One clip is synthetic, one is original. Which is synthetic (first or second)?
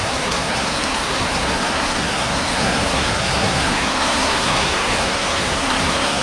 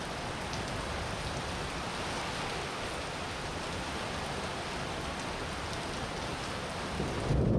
first